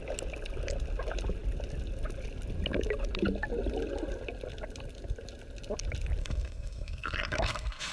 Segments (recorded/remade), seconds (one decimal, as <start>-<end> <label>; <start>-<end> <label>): 0.0-6.2 recorded; 6.2-7.9 remade